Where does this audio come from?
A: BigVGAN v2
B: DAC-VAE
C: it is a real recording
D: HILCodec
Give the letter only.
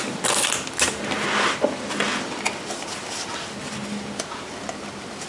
C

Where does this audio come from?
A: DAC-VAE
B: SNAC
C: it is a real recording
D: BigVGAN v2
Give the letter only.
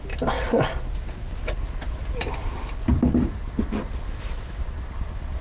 C